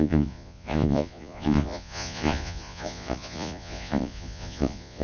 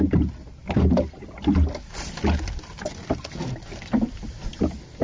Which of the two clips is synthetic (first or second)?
first